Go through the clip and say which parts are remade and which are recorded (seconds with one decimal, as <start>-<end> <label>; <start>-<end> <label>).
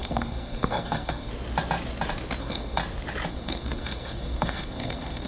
0.0-1.3 remade; 1.3-2.4 recorded; 2.4-2.8 remade; 2.8-3.3 recorded; 3.3-5.3 remade